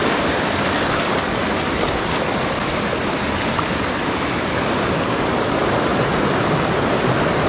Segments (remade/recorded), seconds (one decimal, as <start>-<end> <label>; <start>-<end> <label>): 0.0-1.4 remade; 1.4-4.5 recorded; 4.5-7.5 remade